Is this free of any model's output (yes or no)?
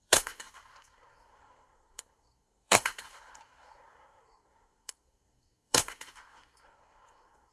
no